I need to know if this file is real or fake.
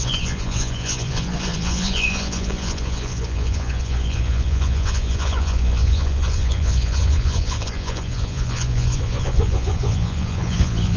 fake